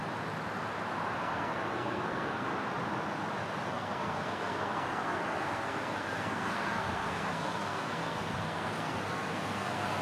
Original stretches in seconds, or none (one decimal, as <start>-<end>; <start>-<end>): 0.0-1.2; 2.5-3.7